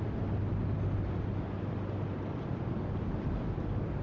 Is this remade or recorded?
recorded